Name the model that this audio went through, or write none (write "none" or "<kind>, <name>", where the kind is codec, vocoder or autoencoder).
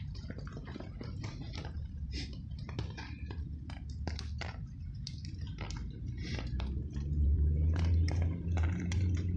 vocoder, BigVGAN v2